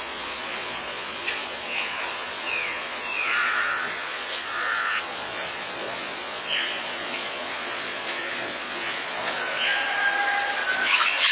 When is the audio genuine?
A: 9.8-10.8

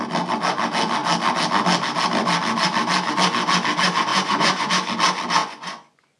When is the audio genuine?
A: 0.0-4.1; 4.7-5.4

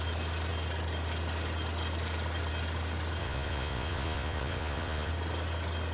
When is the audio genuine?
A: 0.0-3.2; 5.1-5.9

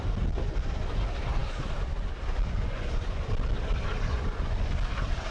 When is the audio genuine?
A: 0.0-2.6; 3.3-4.1; 4.7-5.3